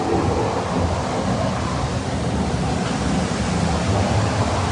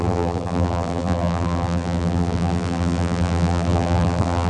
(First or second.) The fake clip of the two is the second